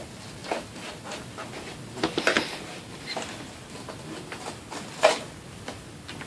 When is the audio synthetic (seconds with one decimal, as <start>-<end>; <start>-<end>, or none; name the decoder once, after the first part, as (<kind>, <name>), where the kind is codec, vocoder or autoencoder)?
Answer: none